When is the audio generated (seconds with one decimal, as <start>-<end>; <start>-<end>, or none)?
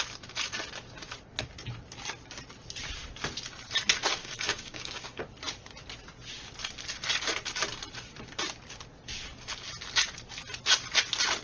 4.2-5.2